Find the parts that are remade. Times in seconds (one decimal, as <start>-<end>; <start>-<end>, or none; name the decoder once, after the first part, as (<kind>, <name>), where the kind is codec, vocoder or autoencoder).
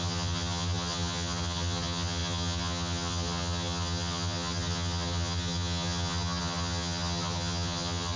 0.0-8.2 (vocoder, HiFi-GAN)